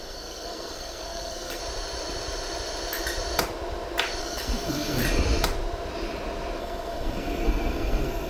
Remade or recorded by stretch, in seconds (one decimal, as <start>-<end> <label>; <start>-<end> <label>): 0.0-1.6 remade; 1.6-4.2 recorded; 4.2-5.0 remade; 5.0-6.6 recorded; 6.6-8.3 remade